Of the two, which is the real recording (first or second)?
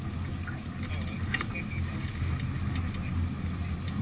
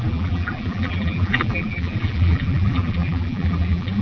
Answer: first